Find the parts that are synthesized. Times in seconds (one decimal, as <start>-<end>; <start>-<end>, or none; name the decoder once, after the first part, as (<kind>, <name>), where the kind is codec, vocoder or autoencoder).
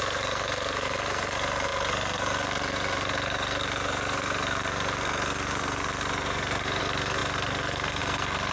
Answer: 0.0-8.5 (codec, SNAC)